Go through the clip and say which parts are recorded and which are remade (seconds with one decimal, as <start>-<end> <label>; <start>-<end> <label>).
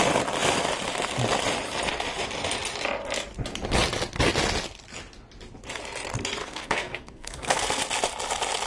0.0-6.4 recorded; 6.4-7.8 remade; 7.8-8.7 recorded